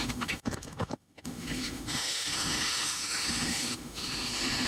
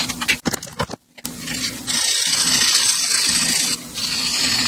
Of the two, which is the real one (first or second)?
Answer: second